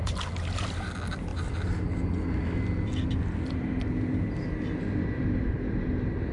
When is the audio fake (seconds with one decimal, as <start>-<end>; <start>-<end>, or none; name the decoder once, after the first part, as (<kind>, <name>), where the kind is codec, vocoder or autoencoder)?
none